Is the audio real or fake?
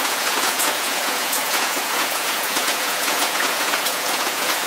fake